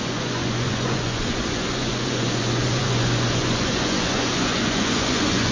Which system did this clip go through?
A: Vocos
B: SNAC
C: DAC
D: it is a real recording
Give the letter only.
A